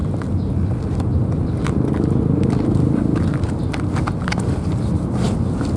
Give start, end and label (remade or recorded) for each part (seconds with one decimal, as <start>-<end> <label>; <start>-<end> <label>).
0.0-0.7 remade; 0.7-1.1 recorded; 1.1-2.2 remade; 2.2-5.8 recorded